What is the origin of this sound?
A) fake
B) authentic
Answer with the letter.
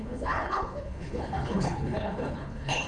A